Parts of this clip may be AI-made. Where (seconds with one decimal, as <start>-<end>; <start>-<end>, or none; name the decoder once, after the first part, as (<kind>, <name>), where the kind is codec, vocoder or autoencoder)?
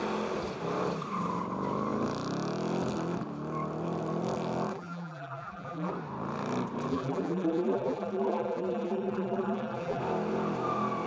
4.7-5.9 (vocoder, BigVGAN v2); 6.9-10.0